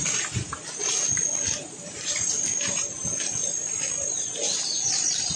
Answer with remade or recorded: recorded